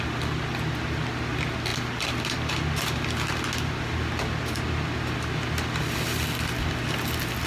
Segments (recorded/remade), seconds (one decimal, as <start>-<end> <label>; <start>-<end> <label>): 0.0-7.5 recorded